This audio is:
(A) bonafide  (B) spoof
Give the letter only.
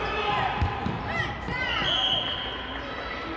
A